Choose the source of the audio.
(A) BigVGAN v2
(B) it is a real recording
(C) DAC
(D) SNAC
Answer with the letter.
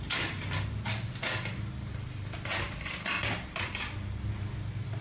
B